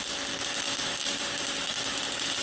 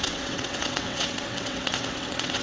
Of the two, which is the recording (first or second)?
first